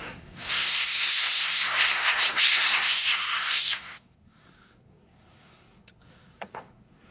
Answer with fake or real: fake